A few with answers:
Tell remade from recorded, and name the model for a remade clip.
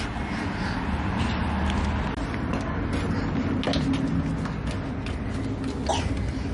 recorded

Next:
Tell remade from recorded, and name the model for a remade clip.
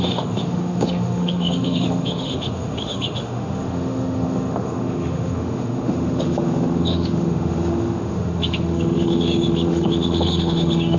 remade, autoencoder, DAC-VAE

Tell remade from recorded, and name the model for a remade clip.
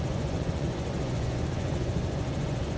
remade, vocoder, Vocos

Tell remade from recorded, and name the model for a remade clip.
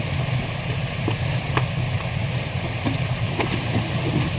remade, vocoder, BigVGAN v2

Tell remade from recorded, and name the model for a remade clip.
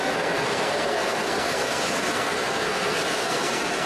remade, codec, SNAC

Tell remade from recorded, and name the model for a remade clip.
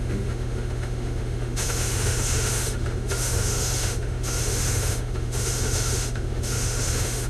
remade, autoencoder, DAC-VAE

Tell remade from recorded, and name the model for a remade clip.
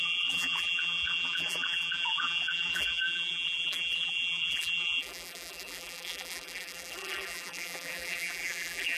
remade, vocoder, BigVGAN v2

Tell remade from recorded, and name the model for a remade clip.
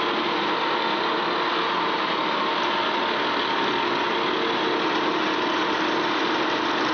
recorded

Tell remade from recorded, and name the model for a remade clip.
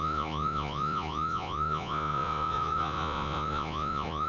remade, vocoder, Vocos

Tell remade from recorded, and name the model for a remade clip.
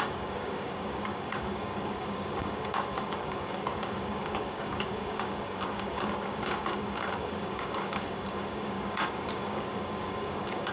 remade, codec, DAC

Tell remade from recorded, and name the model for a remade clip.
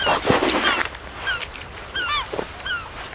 remade, vocoder, BigVGAN v2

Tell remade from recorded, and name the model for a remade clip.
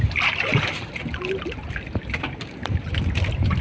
recorded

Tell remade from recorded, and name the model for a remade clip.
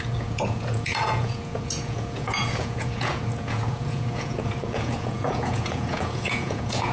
remade, vocoder, Vocos